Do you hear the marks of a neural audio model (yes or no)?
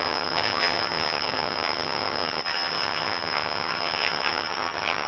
yes